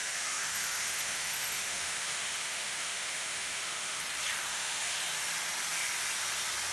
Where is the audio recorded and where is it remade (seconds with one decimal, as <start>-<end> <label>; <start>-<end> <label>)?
0.0-4.0 remade; 4.0-4.5 recorded; 4.5-5.0 remade; 5.0-6.7 recorded

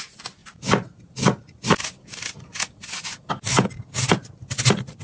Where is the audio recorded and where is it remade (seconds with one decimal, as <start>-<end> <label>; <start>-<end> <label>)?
0.0-5.0 recorded